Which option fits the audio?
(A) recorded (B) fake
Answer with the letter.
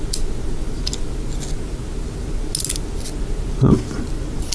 A